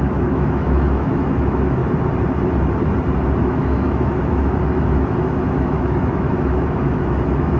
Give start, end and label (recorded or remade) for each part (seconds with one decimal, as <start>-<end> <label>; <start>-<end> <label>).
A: 0.0-1.8 remade; 1.8-3.4 recorded; 3.4-7.6 remade